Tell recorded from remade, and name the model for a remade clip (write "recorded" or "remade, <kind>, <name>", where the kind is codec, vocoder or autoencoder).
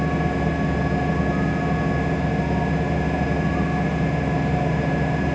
recorded